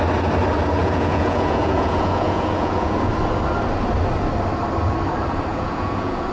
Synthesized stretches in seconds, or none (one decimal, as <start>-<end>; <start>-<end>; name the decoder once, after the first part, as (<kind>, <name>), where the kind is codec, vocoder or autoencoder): 0.8-3.1 (vocoder, Vocos); 5.5-6.3